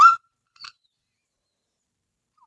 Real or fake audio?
fake